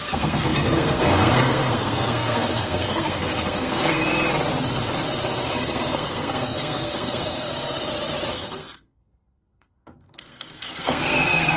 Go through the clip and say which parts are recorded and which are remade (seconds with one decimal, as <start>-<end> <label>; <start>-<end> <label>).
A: 0.0-4.0 remade; 4.0-5.5 recorded; 5.5-7.5 remade; 7.5-8.3 recorded; 8.3-11.6 remade

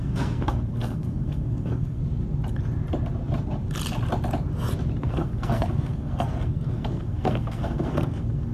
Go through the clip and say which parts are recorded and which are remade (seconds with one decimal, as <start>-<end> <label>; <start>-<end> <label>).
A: 0.0-2.0 remade; 2.0-5.0 recorded; 5.0-8.5 remade

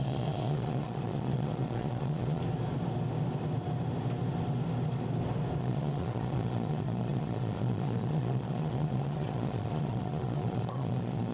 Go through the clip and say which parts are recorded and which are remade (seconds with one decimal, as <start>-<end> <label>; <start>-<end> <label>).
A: 0.0-2.4 remade; 2.4-5.6 recorded; 5.6-11.3 remade

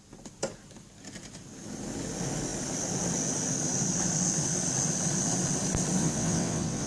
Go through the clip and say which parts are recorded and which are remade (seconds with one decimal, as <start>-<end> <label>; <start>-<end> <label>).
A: 0.0-6.0 recorded; 6.0-6.9 remade

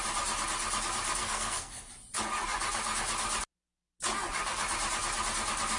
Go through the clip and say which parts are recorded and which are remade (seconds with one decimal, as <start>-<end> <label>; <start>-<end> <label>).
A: 0.0-1.2 recorded; 1.2-1.9 remade; 1.9-5.8 recorded

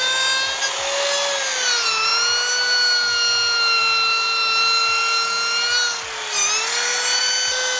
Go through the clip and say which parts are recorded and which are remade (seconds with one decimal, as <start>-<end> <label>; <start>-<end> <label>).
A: 0.0-7.8 recorded

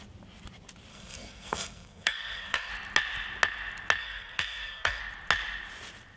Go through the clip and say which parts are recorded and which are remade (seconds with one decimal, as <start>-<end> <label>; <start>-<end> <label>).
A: 0.0-0.9 recorded; 0.9-2.7 remade; 2.7-4.0 recorded; 4.0-5.0 remade; 5.0-6.2 recorded

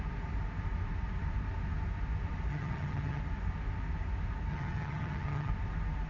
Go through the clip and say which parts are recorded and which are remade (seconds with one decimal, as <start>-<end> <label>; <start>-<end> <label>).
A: 0.0-2.5 recorded; 2.5-3.2 remade; 3.2-4.5 recorded; 4.5-5.5 remade; 5.5-6.1 recorded